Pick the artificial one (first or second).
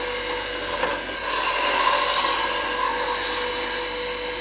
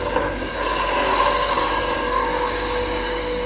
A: second